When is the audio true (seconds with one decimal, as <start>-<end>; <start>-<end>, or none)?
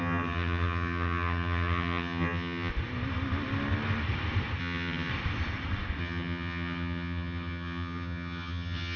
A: 2.7-4.6; 5.1-6.0